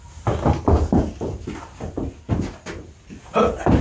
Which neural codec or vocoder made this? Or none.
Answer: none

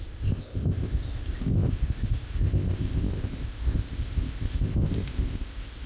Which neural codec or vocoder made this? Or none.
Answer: codec, ZipCodec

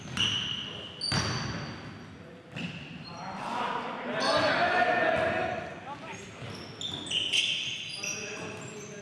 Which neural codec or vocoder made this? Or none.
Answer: none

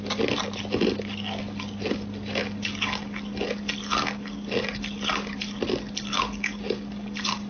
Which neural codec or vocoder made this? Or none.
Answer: none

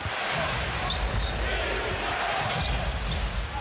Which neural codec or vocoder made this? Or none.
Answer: none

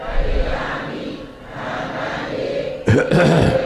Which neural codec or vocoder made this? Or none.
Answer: none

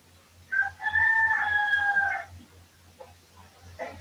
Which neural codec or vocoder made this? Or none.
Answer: none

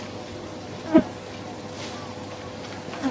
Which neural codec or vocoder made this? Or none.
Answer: none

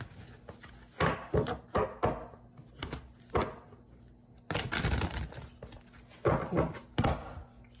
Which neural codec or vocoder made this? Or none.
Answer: none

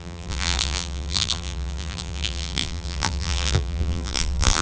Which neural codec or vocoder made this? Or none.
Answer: vocoder, BigVGAN v2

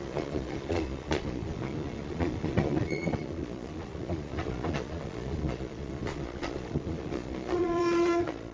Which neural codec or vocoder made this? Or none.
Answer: vocoder, Vocos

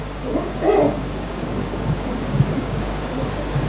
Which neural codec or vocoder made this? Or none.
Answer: codec, DAC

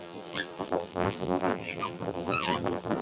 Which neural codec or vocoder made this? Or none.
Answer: vocoder, BigVGAN v2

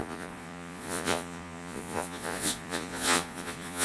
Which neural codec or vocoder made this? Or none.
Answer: vocoder, Vocos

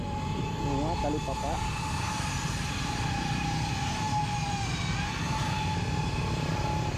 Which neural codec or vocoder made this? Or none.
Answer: none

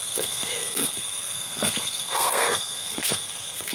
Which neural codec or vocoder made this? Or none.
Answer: codec, SNAC